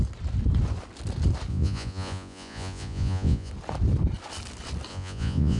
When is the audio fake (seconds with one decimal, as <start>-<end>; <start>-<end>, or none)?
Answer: 1.5-3.5; 4.9-5.6